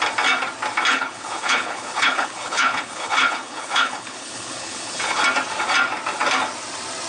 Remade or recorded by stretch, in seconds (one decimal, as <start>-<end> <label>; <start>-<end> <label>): 0.0-0.9 recorded; 0.9-5.2 remade; 5.2-7.1 recorded